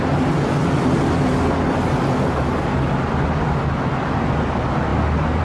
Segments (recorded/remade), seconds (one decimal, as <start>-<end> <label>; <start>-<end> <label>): 0.0-5.4 recorded